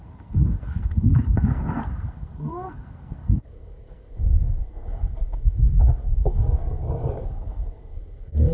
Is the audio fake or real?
fake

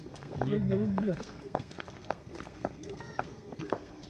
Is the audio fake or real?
fake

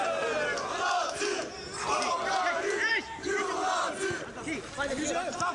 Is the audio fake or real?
real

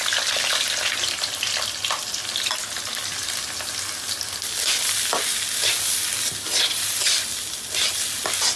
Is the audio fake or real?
real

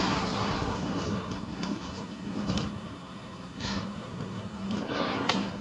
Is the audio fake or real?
fake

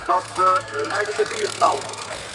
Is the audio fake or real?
fake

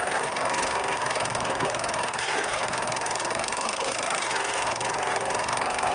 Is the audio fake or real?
fake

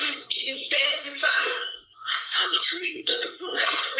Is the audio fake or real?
fake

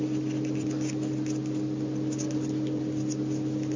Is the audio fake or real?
real